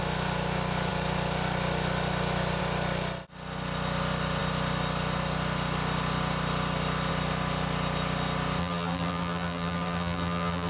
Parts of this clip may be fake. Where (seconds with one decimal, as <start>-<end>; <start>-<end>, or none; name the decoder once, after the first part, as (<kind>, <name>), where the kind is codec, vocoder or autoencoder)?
8.6-10.7 (vocoder, BigVGAN v2)